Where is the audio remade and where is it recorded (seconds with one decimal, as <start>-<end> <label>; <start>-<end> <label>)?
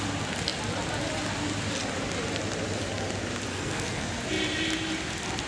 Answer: 0.0-3.5 recorded; 3.5-4.1 remade; 4.1-5.5 recorded